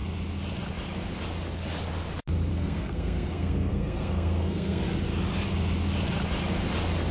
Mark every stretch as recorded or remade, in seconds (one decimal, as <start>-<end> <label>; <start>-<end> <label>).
0.0-2.5 recorded; 2.5-4.8 remade; 4.8-7.1 recorded